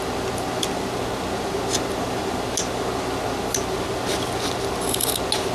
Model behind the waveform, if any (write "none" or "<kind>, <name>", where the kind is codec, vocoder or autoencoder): none